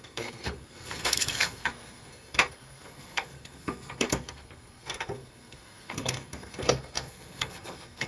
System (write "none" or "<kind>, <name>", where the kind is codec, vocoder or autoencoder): codec, SNAC